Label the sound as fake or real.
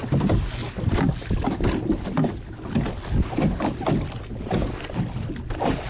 real